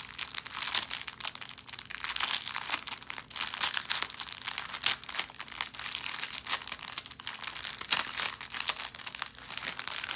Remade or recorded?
recorded